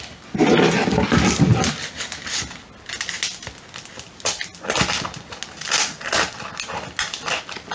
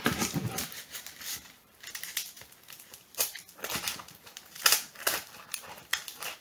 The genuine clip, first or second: first